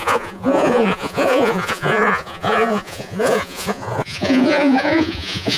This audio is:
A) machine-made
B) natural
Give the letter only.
A